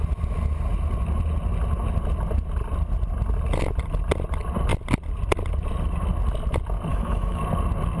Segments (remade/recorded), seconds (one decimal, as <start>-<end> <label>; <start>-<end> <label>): 0.0-6.9 recorded; 6.9-7.4 remade; 7.4-8.0 recorded